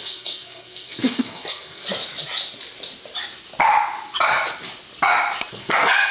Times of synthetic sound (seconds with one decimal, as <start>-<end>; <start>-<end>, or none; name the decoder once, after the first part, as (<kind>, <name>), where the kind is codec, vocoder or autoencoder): 0.0-1.8 (codec, SNAC); 5.5-6.1